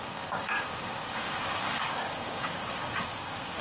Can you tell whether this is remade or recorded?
remade